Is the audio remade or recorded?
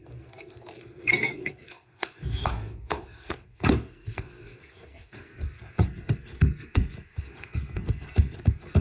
remade